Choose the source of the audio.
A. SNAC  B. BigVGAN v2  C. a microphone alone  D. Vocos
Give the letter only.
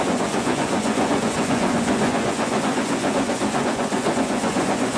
D